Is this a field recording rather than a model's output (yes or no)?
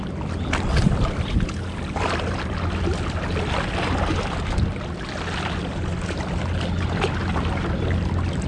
yes